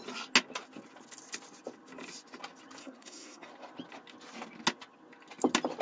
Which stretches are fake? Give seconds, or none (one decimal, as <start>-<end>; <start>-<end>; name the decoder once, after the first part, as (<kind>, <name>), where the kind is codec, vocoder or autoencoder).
2.8-3.5 (codec, SNAC)